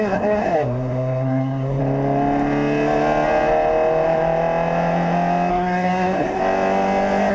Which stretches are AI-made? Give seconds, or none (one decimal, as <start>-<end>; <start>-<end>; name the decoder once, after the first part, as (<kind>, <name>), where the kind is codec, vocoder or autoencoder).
0.0-1.8 (codec, SNAC); 5.5-6.4